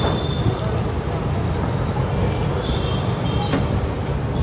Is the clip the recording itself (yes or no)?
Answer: yes